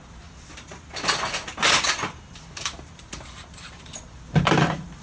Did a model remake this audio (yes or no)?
yes